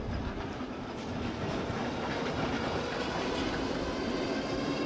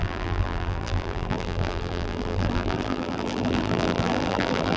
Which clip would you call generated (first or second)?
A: second